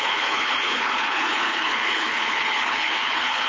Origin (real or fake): fake